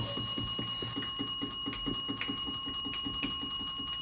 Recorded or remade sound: recorded